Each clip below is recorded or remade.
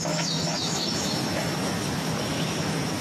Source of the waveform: remade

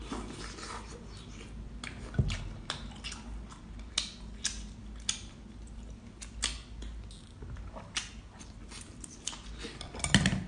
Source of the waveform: recorded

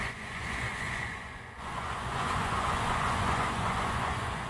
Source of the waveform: remade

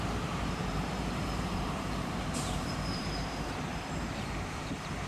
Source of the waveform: remade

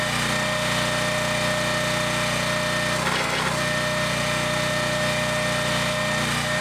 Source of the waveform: recorded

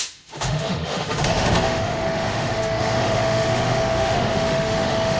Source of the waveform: remade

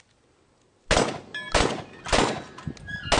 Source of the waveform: recorded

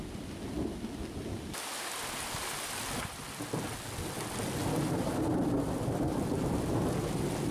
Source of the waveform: recorded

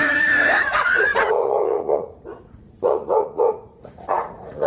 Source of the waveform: remade